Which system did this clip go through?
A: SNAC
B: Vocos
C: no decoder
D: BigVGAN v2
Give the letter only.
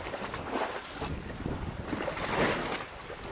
C